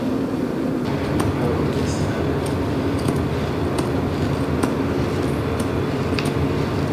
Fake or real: real